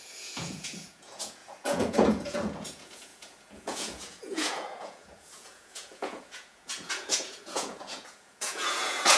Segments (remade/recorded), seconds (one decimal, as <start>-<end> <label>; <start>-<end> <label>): 0.0-9.2 remade